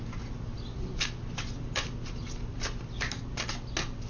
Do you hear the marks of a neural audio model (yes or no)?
no